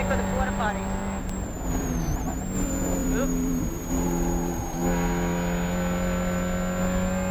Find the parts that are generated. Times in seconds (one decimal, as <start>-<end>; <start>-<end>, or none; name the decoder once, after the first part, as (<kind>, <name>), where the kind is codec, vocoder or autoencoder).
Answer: 0.0-4.8 (vocoder, BigVGAN v2)